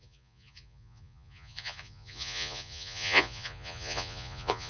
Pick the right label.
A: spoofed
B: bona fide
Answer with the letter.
A